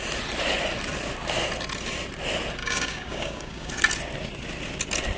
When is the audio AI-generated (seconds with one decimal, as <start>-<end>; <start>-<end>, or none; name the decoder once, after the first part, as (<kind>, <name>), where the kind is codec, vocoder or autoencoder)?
2.6-3.7 (codec, DAC)